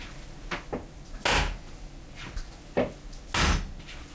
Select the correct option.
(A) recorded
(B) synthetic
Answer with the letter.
A